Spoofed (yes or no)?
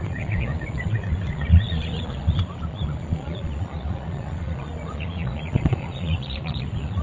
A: yes